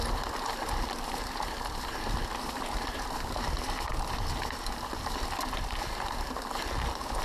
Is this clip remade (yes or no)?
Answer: no